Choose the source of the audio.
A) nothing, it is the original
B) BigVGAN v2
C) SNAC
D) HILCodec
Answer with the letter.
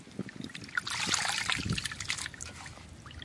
A